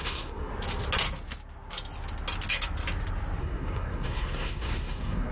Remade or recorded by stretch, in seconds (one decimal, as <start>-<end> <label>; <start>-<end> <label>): 0.0-0.5 remade; 0.5-3.4 recorded; 3.4-5.3 remade